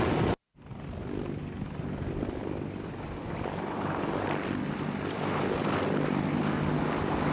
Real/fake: real